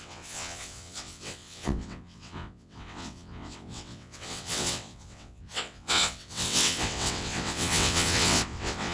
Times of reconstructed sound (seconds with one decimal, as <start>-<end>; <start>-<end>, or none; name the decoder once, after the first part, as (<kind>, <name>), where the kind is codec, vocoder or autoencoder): 0.0-8.9 (vocoder, WaveNeXt)